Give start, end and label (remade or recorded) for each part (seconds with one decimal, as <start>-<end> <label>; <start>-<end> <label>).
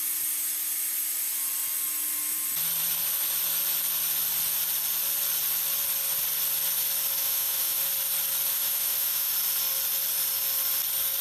0.0-7.2 recorded; 7.2-7.8 remade; 7.8-8.5 recorded; 8.5-9.3 remade; 9.3-11.2 recorded